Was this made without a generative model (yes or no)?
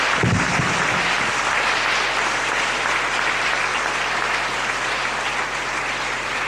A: yes